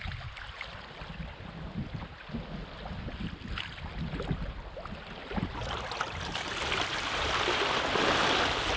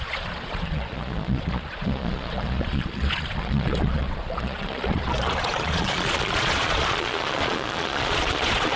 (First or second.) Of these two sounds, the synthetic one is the second